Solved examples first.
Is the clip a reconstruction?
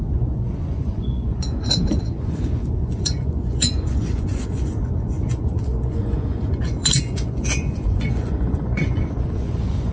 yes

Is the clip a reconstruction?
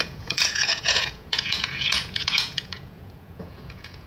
yes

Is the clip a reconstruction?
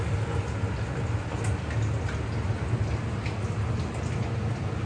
no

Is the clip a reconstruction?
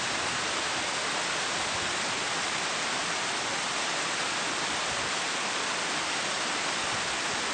no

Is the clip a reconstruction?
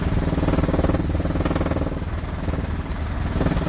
no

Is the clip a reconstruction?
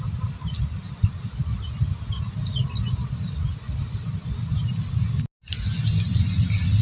no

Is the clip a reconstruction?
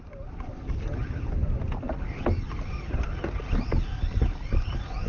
no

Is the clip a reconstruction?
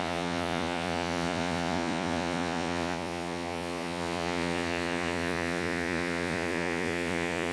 yes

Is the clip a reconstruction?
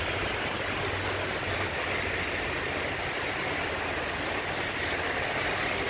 no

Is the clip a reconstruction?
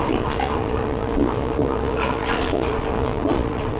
yes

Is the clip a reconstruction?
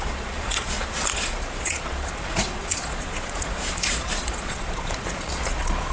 yes